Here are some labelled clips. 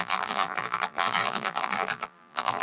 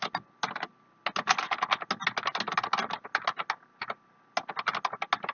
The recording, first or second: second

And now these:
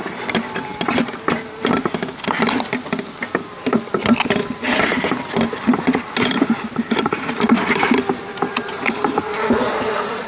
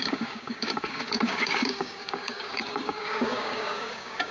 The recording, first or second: first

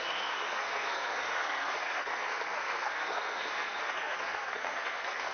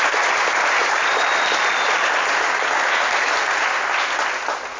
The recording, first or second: second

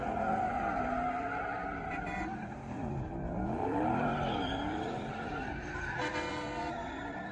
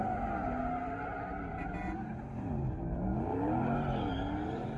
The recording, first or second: second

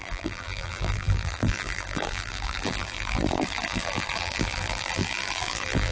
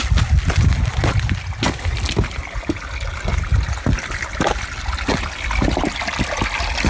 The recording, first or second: second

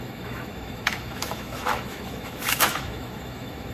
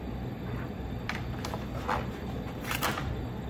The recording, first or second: second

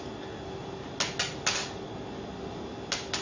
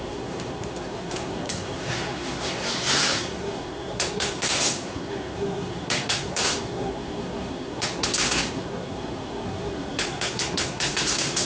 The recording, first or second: first